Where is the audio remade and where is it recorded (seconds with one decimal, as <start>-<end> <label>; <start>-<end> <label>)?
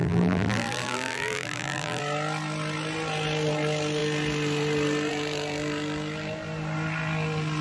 0.0-2.0 remade; 2.0-7.6 recorded